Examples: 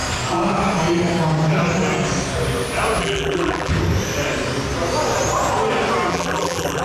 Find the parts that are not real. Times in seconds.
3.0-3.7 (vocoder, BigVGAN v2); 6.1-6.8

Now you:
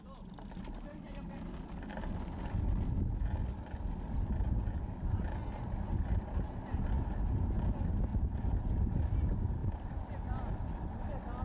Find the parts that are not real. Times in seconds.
8.1-8.6 (vocoder, BigVGAN v2); 9.6-10.5

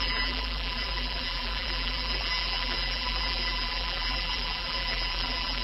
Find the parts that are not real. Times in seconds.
0.0-5.6 (vocoder, BigVGAN v2)